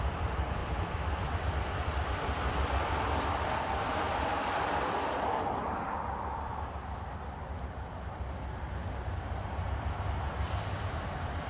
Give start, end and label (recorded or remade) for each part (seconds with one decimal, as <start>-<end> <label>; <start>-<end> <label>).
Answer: 0.0-6.5 remade; 6.5-8.7 recorded; 8.7-11.5 remade